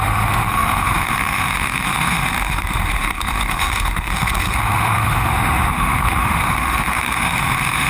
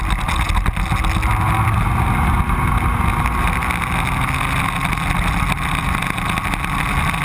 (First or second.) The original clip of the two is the second